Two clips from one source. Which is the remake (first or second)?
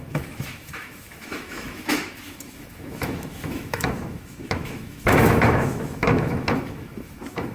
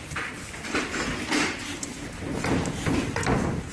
first